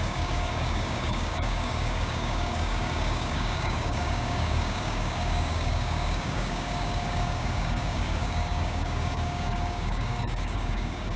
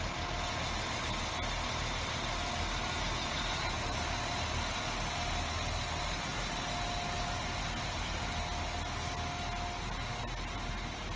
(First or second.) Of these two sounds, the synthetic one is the first